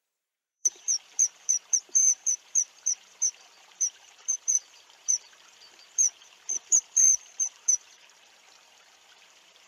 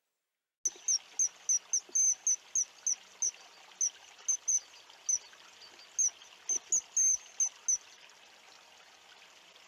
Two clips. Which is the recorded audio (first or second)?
second